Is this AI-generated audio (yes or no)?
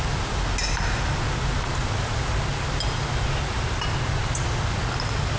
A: no